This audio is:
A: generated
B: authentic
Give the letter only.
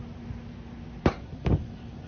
B